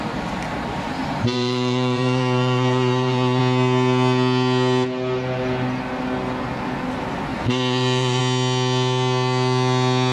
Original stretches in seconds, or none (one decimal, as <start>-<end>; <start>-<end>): 0.0-1.0; 3.4-7.3; 8.2-10.1